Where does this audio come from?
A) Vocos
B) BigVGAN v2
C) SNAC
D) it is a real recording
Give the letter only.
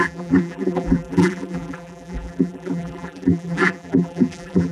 B